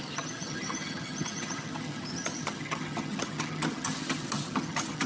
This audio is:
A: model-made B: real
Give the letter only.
A